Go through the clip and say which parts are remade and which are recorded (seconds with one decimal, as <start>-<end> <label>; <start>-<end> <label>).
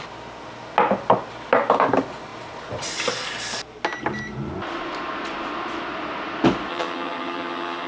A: 0.0-6.7 recorded; 6.7-7.9 remade